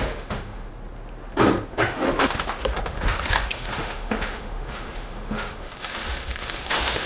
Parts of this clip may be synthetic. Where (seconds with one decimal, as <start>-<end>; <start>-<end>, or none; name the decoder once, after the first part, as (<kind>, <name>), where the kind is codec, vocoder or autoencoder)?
0.0-0.7 (autoencoder, DAC-VAE); 1.7-7.1